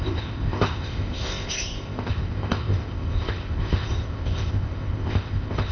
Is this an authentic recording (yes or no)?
no